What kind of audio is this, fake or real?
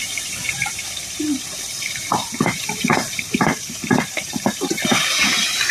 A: fake